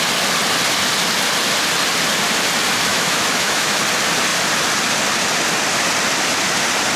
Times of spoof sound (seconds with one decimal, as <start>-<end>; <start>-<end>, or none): 2.9-3.8